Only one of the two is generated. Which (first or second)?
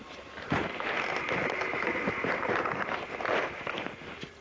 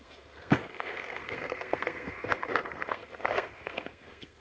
second